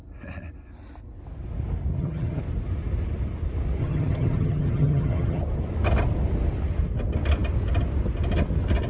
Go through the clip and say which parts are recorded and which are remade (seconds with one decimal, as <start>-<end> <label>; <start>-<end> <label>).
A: 0.0-1.9 recorded; 1.9-2.4 remade; 2.4-3.8 recorded; 3.8-5.4 remade; 5.4-8.9 recorded